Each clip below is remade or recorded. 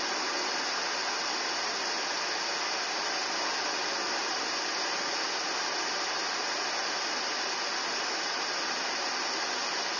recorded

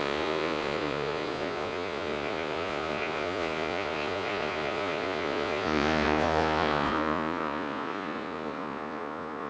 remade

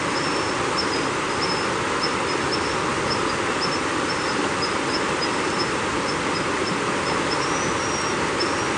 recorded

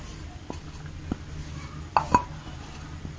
recorded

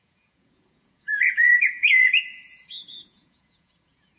remade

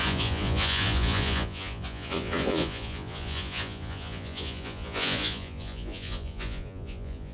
remade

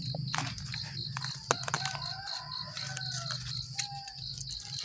recorded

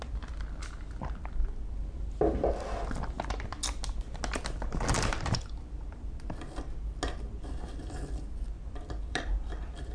recorded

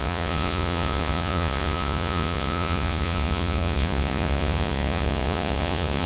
remade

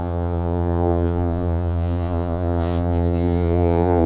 remade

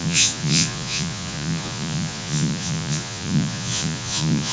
remade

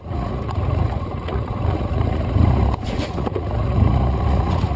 remade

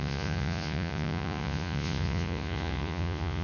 remade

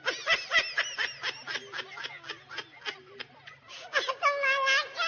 recorded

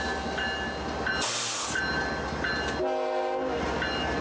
recorded